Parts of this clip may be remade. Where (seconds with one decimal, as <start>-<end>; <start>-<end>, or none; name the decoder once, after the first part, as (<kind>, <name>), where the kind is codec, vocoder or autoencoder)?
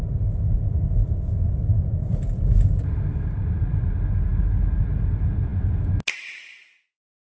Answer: none